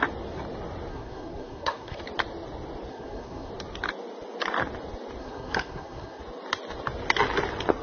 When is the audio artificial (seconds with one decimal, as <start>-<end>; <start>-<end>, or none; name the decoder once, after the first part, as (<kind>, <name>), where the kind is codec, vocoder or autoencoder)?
0.9-2.0 (codec, SNAC); 2.9-3.5; 5.2-6.2